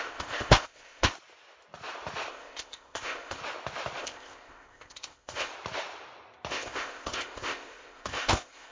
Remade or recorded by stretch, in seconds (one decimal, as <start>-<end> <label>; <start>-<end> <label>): 0.0-1.1 remade; 1.1-2.3 recorded; 2.3-3.4 remade; 3.4-4.0 recorded; 4.0-5.5 remade; 5.5-6.5 recorded; 6.5-8.7 remade